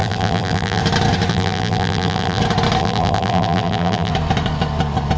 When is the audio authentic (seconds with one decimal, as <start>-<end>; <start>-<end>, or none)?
0.8-1.3; 2.4-2.8; 4.1-5.2